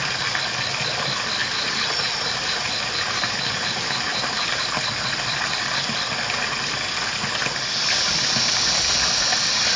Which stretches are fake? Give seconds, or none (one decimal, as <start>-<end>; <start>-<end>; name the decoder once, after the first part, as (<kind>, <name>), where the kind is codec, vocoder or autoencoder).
1.4-4.6 (vocoder, BigVGAN v2)

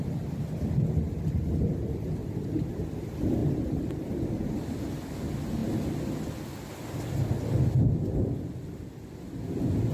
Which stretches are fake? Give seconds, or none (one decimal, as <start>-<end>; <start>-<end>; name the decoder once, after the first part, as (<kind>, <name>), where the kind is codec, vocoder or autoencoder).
2.2-2.7 (vocoder, BigVGAN v2)